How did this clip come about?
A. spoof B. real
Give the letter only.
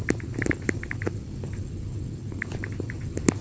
B